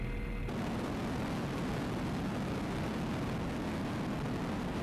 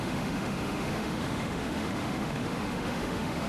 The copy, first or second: second